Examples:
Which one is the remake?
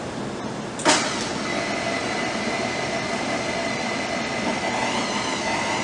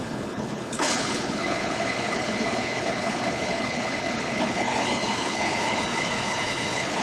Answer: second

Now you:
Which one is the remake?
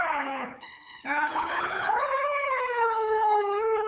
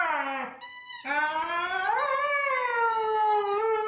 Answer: first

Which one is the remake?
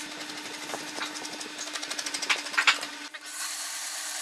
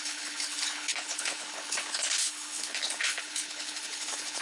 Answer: second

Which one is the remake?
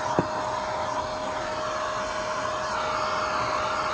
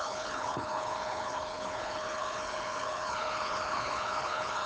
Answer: second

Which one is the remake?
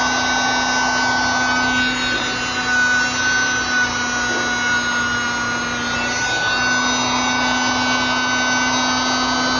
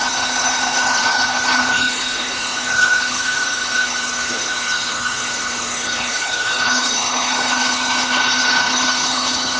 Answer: second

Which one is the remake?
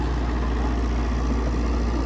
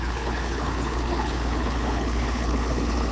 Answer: second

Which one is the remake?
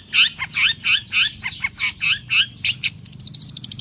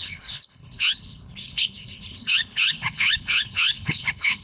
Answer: second